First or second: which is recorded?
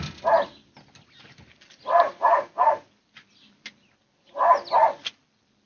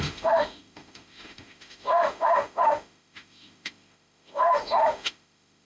first